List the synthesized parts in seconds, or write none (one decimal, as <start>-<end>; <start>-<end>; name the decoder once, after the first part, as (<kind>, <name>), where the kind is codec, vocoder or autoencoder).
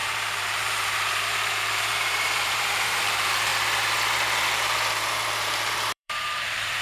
0.0-3.5 (vocoder, BigVGAN v2); 5.4-6.8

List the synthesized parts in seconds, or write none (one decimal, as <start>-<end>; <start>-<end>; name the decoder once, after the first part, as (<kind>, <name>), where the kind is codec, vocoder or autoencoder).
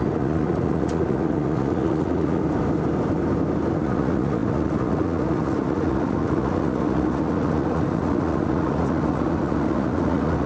0.0-2.4 (vocoder, Vocos); 3.7-10.5